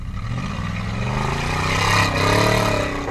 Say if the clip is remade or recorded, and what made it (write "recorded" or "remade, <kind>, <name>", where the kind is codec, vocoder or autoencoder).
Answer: recorded